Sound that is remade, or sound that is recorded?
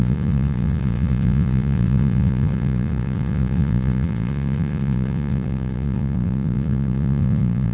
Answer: remade